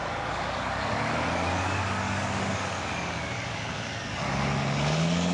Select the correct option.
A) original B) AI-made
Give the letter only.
B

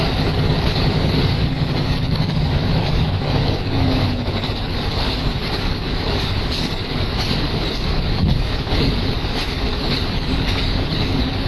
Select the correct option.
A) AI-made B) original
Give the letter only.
A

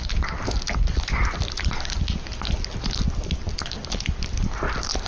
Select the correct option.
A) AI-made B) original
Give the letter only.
B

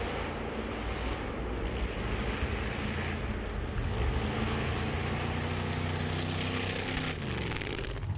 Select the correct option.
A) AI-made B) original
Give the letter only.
B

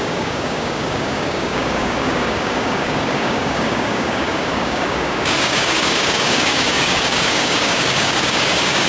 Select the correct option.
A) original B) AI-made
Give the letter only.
B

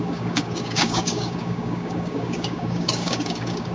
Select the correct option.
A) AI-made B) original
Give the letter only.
A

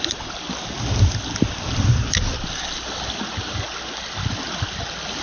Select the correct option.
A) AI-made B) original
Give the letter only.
B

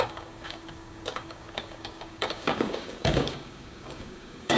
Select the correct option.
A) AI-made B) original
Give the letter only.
A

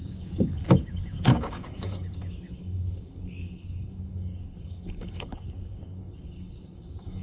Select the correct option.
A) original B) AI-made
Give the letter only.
B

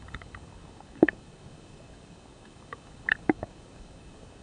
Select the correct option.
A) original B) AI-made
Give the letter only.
B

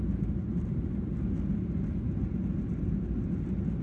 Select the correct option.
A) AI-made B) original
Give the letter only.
B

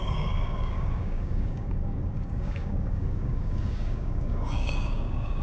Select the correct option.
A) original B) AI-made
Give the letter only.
B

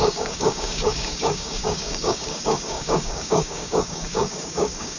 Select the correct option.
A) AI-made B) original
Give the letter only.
A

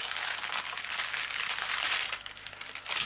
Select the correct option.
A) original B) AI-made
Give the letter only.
A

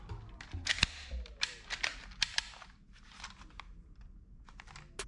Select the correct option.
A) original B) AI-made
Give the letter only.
A